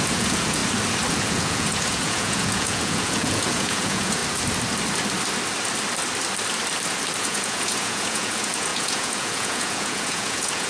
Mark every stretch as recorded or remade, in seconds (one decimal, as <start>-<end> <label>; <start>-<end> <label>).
0.0-0.6 remade; 0.6-1.2 recorded; 1.2-4.2 remade; 4.2-7.2 recorded; 7.2-10.7 remade